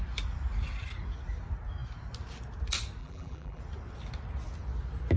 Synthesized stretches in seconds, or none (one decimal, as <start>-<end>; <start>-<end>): 3.0-3.6